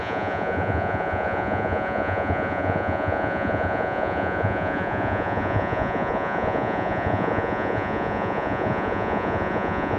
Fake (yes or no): yes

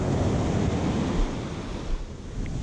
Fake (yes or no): no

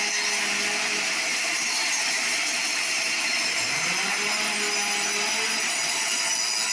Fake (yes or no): no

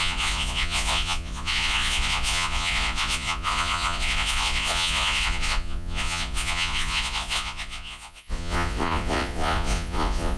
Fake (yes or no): yes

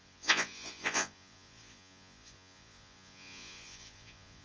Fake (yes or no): yes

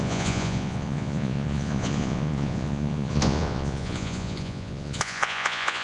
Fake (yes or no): yes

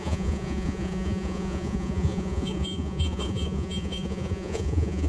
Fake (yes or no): yes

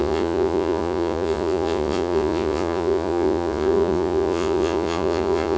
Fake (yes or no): yes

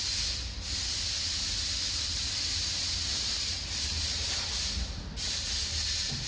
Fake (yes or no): no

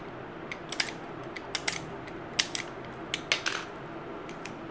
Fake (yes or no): no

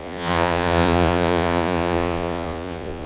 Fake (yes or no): yes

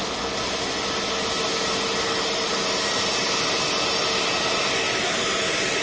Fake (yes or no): no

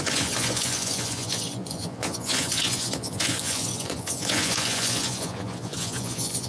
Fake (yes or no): yes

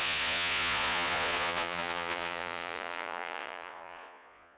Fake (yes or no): yes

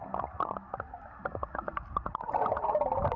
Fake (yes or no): no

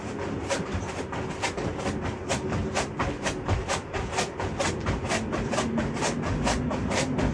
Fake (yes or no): no